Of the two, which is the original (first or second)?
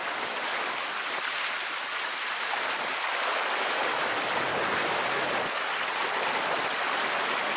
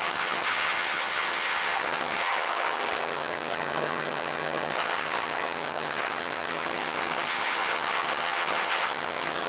first